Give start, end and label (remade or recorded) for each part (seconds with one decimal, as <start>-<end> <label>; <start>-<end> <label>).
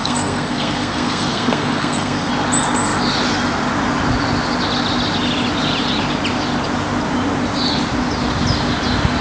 0.0-2.3 remade; 2.3-9.2 recorded